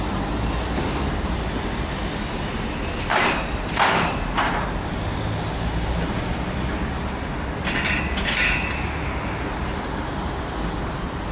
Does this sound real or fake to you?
real